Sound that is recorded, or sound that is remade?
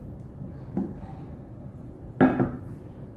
recorded